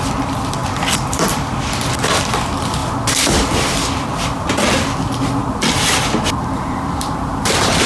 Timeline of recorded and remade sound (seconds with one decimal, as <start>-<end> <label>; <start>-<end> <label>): 0.0-0.6 recorded; 0.6-2.3 remade; 2.3-2.8 recorded; 2.8-4.6 remade; 4.6-5.4 recorded; 5.4-7.9 remade